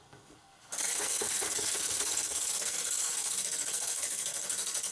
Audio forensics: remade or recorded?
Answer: remade